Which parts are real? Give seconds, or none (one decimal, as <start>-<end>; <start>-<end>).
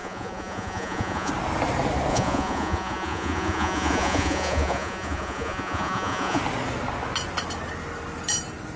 1.3-2.1; 6.4-8.8